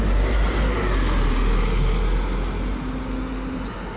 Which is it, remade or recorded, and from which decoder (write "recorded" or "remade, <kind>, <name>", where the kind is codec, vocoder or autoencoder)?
recorded